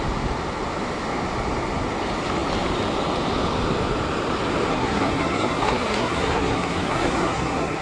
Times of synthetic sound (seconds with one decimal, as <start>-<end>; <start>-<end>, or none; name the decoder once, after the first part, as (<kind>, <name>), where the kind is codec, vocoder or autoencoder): 4.7-7.8 (codec, SNAC)